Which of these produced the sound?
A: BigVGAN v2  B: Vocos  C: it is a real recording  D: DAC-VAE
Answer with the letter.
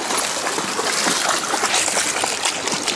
C